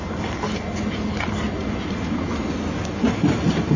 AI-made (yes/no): no